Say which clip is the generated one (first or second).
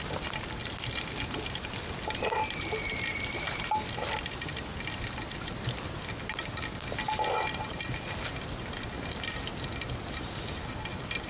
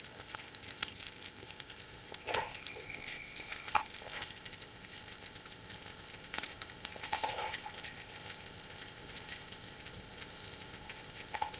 second